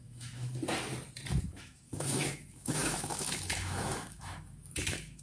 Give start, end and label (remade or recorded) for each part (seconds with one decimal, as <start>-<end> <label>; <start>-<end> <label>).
0.0-0.5 remade; 0.5-1.4 recorded; 1.4-5.2 remade